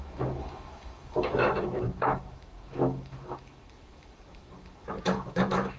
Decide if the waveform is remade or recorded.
remade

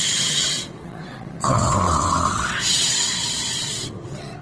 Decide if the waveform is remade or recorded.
remade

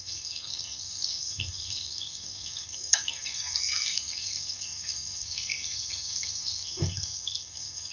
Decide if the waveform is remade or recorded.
remade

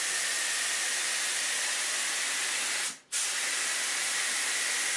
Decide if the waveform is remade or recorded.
recorded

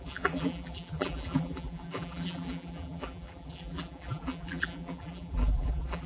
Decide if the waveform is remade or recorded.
remade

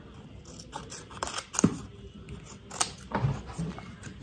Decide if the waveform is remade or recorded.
recorded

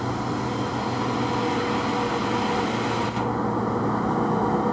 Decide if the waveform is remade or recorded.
recorded